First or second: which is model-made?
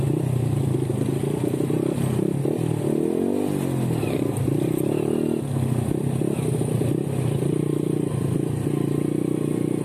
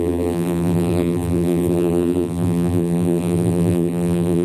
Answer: second